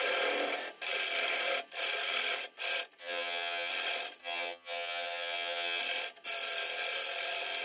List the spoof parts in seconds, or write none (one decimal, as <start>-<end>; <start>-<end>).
3.0-3.7; 4.2-5.8